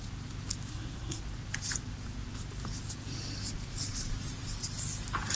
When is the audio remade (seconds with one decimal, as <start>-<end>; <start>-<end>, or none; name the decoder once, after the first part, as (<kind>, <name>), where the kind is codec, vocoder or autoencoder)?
0.7-1.2 (codec, SNAC)